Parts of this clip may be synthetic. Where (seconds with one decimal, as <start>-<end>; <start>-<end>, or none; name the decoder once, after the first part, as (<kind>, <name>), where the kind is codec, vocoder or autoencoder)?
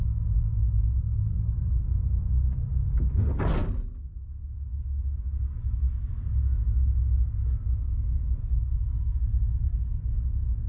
5.6-6.2 (codec, SNAC); 8.4-10.0